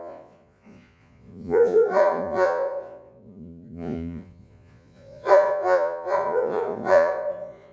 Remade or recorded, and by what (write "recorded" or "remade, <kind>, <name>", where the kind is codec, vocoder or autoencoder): remade, vocoder, Vocos